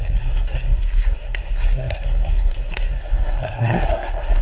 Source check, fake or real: fake